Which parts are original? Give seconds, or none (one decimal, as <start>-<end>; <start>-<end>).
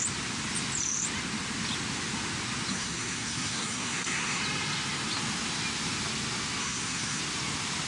0.0-2.7; 4.4-6.6; 7.2-7.9